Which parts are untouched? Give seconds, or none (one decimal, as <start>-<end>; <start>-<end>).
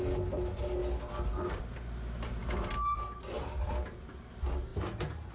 0.0-5.3